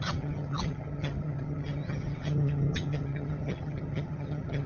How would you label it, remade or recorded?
remade